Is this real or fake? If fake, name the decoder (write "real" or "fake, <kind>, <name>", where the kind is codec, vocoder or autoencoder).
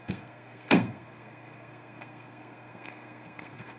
fake, codec, SNAC